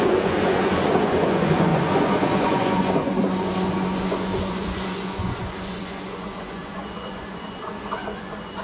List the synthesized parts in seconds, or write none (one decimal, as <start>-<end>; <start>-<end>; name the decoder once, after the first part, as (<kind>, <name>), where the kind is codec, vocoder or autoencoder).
0.0-8.6 (vocoder, Vocos)